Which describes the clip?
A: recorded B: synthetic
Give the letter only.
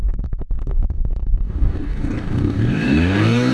B